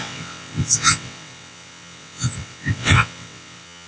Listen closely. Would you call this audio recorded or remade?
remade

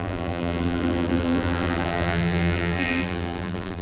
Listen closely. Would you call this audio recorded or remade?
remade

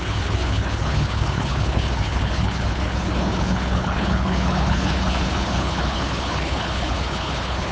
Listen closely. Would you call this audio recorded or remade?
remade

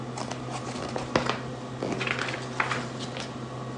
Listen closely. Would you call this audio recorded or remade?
recorded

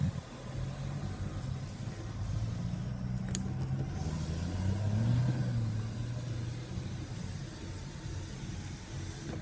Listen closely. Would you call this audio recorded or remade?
recorded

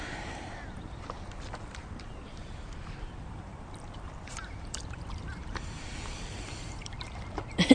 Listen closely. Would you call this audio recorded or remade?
remade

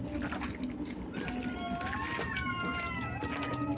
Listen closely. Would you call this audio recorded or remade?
recorded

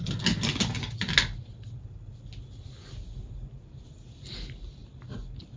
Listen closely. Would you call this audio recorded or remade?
recorded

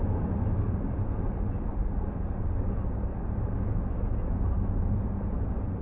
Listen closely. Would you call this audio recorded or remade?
recorded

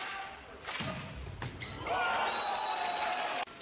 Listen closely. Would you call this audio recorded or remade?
recorded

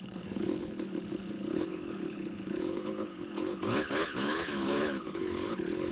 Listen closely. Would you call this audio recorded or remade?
remade